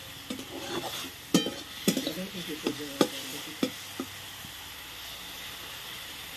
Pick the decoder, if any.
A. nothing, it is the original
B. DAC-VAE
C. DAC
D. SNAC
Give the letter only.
A